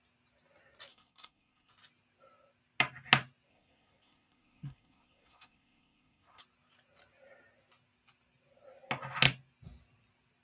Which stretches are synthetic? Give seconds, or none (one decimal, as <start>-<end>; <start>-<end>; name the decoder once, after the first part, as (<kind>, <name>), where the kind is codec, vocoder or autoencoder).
0.9-1.7 (codec, SNAC); 3.5-6.4